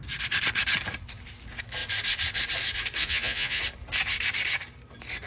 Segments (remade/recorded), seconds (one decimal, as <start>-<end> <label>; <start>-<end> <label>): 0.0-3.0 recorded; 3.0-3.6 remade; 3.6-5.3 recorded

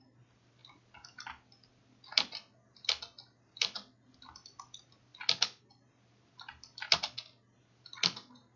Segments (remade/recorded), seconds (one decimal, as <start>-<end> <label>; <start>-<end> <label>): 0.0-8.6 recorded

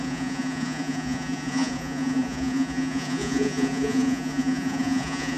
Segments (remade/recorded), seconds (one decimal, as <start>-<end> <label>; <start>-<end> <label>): 0.0-5.4 remade